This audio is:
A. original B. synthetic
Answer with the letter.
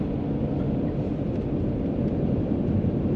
B